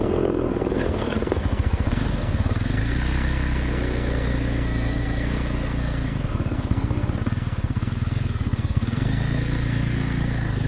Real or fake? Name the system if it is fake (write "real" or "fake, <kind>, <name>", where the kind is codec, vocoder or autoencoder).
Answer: fake, codec, SNAC